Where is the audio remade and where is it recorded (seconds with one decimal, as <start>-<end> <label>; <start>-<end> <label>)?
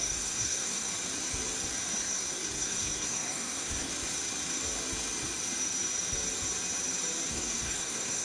0.0-0.9 remade; 0.9-2.0 recorded; 2.0-3.9 remade; 3.9-7.3 recorded; 7.3-8.2 remade